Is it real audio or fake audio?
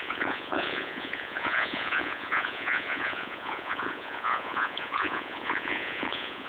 fake